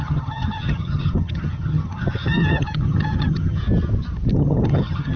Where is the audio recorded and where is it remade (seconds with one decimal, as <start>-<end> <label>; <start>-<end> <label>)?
0.0-3.6 remade; 3.6-4.3 recorded; 4.3-5.2 remade